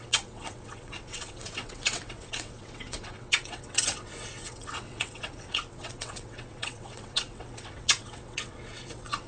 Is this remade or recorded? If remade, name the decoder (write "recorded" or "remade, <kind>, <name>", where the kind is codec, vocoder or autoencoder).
remade, vocoder, WaveNeXt